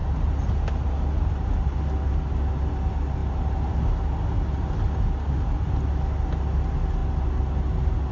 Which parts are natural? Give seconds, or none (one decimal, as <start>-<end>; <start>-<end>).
0.6-8.1